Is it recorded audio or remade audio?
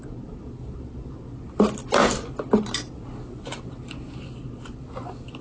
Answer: recorded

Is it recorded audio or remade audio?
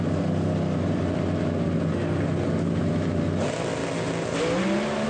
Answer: recorded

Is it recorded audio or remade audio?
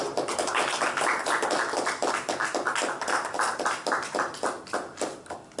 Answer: recorded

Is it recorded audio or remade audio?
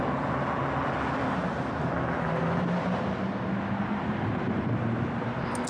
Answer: recorded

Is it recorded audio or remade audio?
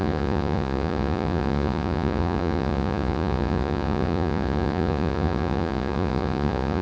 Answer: remade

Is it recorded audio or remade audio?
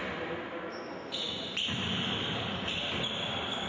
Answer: recorded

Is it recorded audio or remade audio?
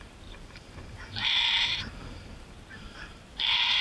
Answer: remade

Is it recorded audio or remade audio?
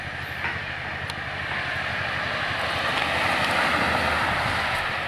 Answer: recorded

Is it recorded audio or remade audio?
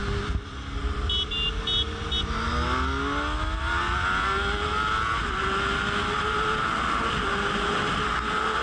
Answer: recorded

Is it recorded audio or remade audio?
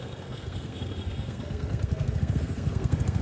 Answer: remade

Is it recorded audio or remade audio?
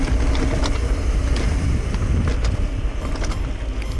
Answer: recorded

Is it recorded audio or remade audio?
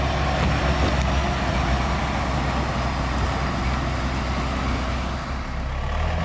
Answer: recorded